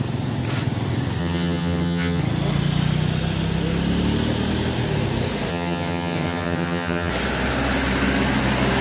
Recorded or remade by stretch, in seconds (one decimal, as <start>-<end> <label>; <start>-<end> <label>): 0.0-1.2 recorded; 1.2-2.2 remade; 2.2-5.5 recorded; 5.5-7.1 remade; 7.1-8.8 recorded